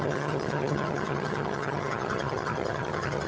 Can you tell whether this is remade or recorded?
remade